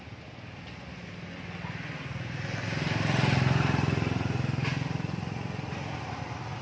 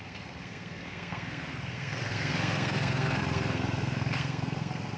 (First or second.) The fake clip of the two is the second